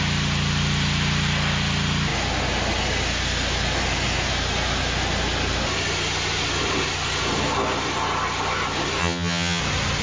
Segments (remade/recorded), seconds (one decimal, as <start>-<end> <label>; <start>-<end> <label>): 0.0-9.0 recorded; 9.0-9.6 remade; 9.6-10.0 recorded